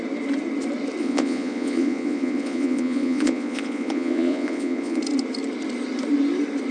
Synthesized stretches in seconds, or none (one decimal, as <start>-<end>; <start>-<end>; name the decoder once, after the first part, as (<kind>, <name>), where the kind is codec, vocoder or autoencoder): 1.0-5.0 (vocoder, Vocos)